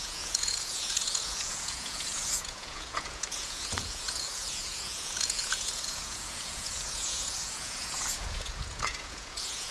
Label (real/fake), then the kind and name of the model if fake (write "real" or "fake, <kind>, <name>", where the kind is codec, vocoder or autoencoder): fake, vocoder, Vocos